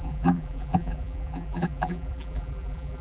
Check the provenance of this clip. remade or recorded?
remade